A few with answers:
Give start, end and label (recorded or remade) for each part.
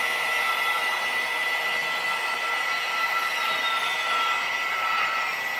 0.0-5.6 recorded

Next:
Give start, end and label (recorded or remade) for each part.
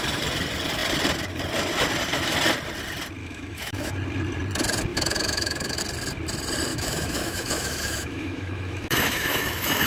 0.0-3.2 recorded; 3.2-3.9 remade; 3.9-4.9 recorded; 4.9-5.8 remade; 5.8-6.7 recorded; 6.7-9.9 remade